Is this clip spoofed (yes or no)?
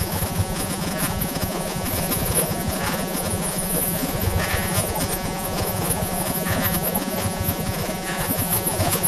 yes